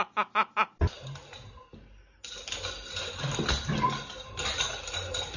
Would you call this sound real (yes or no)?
yes